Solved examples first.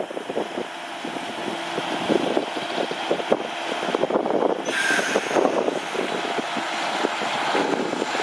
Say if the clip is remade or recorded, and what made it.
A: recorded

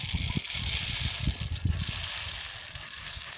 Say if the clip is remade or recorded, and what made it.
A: recorded